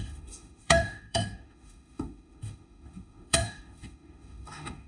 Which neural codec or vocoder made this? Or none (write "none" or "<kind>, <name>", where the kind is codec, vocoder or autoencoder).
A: autoencoder, DAC-VAE